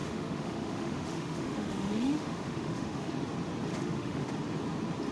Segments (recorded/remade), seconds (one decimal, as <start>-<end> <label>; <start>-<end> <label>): 0.0-3.1 remade; 3.1-3.7 recorded; 3.7-4.3 remade; 4.3-5.1 recorded